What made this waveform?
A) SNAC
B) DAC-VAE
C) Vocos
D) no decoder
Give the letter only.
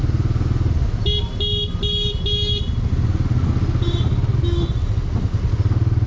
D